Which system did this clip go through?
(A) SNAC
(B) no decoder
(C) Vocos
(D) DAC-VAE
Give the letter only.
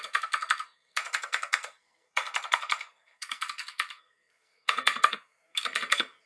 A